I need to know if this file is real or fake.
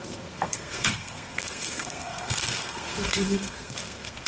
fake